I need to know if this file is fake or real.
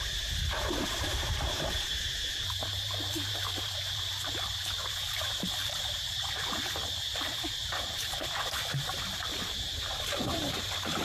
fake